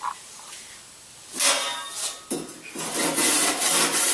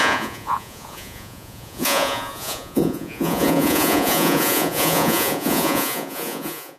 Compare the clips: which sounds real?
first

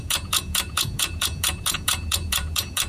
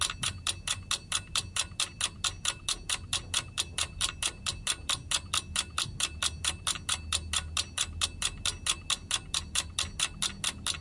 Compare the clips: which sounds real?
second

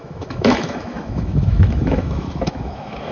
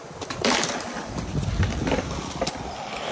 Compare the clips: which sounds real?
second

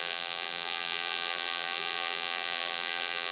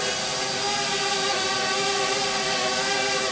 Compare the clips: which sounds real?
second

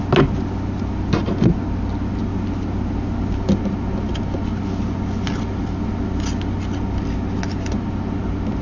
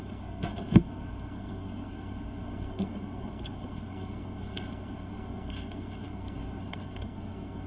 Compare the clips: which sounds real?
first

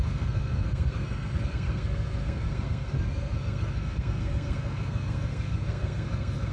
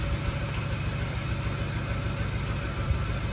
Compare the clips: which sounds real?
second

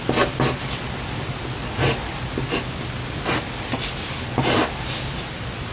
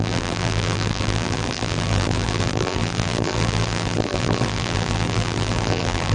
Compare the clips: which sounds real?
first